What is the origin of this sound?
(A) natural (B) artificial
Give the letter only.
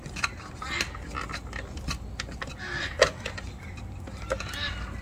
A